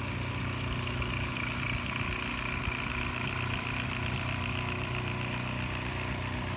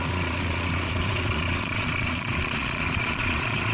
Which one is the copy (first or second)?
second